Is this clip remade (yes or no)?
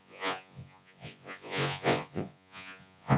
yes